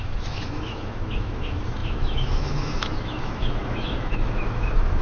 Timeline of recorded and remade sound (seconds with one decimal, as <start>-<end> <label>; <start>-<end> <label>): 0.0-5.0 remade